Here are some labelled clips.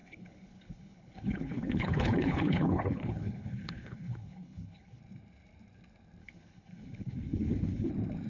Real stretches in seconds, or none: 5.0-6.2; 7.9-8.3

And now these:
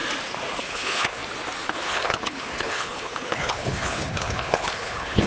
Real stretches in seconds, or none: 0.0-0.6; 1.2-1.7